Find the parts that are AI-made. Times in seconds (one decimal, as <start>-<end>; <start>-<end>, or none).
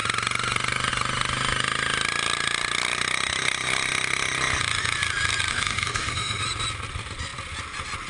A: 5.5-6.4